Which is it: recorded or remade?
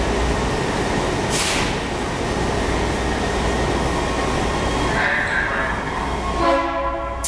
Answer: recorded